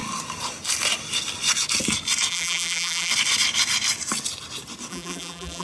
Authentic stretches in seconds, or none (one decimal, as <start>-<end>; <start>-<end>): 0.0-2.3; 3.1-4.9